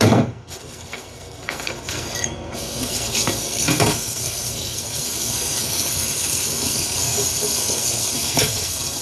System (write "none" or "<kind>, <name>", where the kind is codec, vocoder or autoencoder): codec, SNAC